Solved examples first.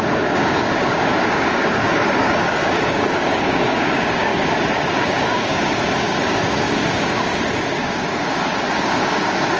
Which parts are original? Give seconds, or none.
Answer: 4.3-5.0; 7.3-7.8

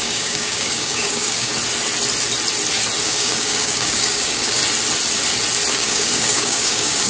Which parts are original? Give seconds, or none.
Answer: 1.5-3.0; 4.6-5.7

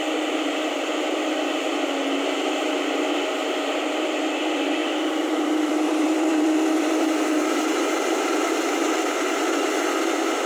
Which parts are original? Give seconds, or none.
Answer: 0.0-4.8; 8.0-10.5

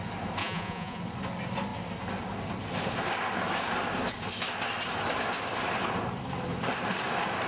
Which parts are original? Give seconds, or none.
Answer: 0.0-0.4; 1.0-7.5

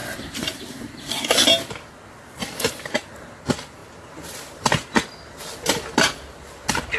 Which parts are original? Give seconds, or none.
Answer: 0.0-7.0

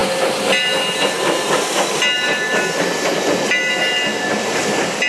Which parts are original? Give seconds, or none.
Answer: 0.0-5.1

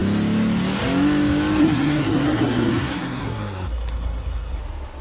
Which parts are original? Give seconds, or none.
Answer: 0.0-1.6; 4.6-5.0